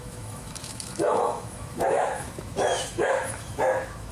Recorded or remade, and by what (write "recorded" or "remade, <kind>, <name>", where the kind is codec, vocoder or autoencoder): remade, autoencoder, DAC-VAE